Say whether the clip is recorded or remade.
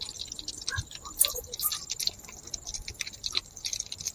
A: recorded